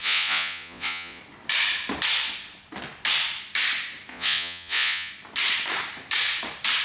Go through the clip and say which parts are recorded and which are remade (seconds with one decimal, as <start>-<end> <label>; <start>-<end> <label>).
0.0-1.2 remade; 1.2-4.1 recorded; 4.1-5.1 remade; 5.1-6.8 recorded